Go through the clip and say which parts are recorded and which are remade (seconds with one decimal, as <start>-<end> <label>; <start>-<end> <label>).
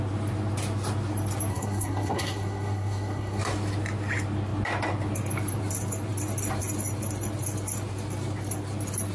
0.0-1.5 recorded; 1.5-3.4 remade; 3.4-9.1 recorded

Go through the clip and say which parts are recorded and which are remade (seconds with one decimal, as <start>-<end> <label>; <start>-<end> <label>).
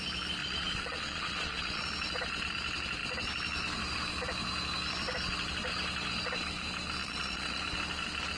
0.0-0.4 recorded; 0.4-1.8 remade; 1.8-7.0 recorded; 7.0-7.6 remade; 7.6-8.4 recorded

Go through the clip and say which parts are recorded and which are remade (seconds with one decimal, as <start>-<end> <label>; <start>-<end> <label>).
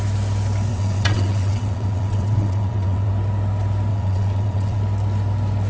0.0-0.7 recorded; 0.7-3.1 remade; 3.1-3.9 recorded; 3.9-4.8 remade; 4.8-5.7 recorded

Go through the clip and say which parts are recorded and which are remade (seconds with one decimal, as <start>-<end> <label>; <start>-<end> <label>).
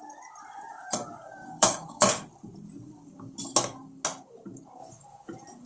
0.0-1.4 recorded; 1.4-2.1 remade; 2.1-5.7 recorded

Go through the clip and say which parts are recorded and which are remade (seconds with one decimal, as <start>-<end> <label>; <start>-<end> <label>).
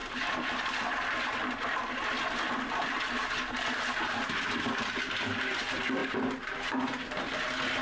0.0-7.8 recorded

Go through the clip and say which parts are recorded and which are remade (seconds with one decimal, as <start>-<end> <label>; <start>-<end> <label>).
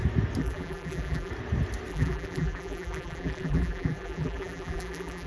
0.0-0.4 recorded; 0.4-1.3 remade; 1.3-1.9 recorded; 1.9-5.3 remade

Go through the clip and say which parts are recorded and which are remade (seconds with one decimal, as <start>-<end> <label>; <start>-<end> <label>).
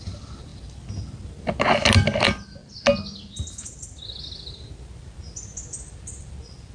0.0-6.7 recorded